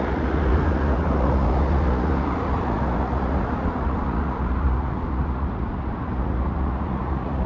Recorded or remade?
remade